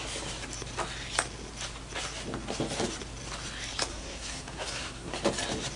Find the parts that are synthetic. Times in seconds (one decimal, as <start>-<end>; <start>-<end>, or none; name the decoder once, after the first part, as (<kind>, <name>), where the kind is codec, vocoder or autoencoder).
3.9-5.1 (codec, SNAC)